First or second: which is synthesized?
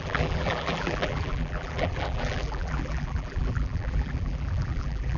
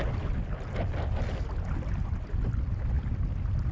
first